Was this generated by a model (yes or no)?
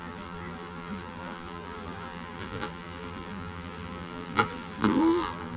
yes